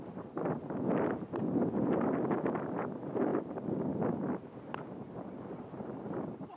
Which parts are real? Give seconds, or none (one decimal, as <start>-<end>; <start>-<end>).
0.0-6.6